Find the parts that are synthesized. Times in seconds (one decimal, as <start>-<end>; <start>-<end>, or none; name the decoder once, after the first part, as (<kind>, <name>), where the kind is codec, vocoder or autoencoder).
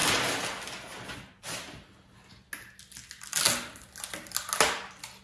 none